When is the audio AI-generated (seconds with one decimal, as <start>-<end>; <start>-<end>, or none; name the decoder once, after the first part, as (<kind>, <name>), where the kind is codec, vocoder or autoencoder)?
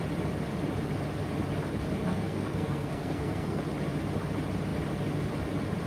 2.0-3.6 (codec, SNAC)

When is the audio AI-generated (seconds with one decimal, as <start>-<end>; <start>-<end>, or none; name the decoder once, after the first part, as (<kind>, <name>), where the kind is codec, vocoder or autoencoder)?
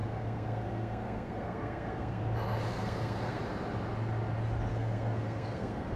0.0-2.2 (codec, SNAC); 2.7-3.4; 4.7-6.0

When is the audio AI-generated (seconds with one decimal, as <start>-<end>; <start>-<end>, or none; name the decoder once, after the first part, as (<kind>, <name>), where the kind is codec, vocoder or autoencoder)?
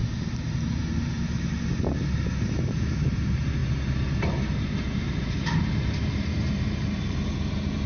0.0-7.9 (vocoder, BigVGAN v2)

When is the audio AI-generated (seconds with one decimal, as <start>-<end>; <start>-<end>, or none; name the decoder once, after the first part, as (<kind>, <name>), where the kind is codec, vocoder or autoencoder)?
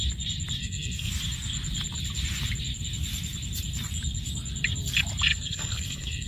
0.6-1.1 (codec, SNAC); 5.3-6.3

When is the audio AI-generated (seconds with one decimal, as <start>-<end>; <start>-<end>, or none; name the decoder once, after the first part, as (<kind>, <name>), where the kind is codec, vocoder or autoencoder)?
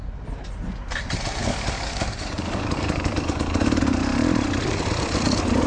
1.4-3.8 (codec, DAC)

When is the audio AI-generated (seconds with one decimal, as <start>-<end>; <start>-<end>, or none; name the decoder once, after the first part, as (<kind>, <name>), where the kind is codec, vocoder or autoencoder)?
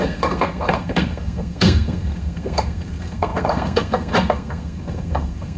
0.0-5.6 (codec, SNAC)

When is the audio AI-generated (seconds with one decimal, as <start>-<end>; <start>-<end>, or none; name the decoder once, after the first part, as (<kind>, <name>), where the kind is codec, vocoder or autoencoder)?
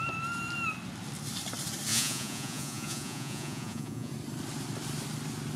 1.9-4.1 (vocoder, Vocos)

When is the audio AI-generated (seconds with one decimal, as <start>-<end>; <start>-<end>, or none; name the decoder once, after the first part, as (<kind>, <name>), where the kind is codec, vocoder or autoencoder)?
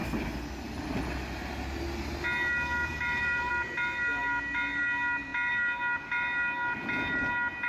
2.9-3.5 (vocoder, BigVGAN v2)